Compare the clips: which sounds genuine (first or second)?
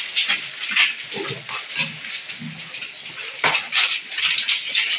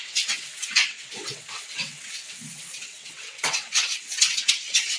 first